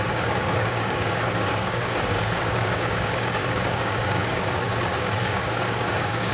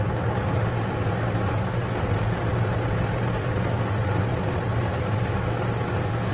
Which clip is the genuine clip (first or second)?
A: second